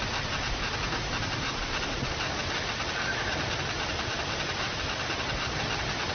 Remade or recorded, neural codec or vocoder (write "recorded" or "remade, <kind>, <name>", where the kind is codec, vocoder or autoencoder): recorded